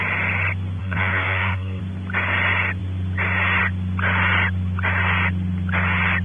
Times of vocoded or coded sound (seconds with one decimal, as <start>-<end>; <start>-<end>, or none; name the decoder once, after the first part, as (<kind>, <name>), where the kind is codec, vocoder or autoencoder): 0.8-1.8 (codec, SNAC)